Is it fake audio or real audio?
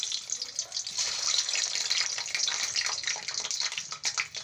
real